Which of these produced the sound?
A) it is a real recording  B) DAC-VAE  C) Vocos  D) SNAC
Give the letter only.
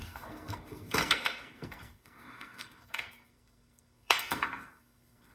D